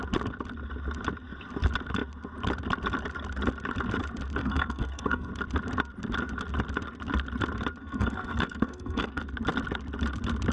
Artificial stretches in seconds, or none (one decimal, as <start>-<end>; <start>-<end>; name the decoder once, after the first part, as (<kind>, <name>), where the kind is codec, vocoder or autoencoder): 4.4-5.3 (codec, SNAC); 7.8-9.2